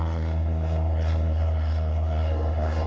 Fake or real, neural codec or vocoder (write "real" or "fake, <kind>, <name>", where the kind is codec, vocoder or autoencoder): fake, codec, SNAC